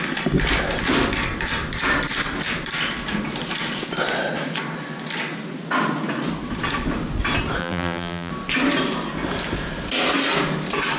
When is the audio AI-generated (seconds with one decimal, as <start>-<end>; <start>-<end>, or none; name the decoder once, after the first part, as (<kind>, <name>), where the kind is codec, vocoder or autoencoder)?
7.6-8.3 (vocoder, BigVGAN v2)